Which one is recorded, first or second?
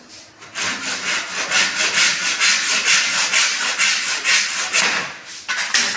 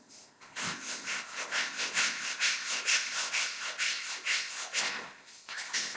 first